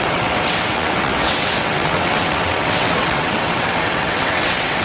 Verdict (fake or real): fake